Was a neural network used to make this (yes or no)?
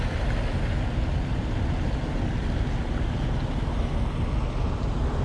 no